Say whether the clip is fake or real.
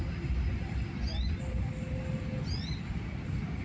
real